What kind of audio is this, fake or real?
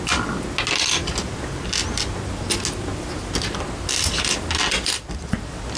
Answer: real